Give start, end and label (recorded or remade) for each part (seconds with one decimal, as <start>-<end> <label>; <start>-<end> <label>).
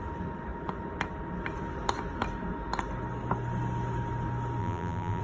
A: 0.0-4.6 recorded; 4.6-5.2 remade